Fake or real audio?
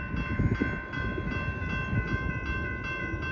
real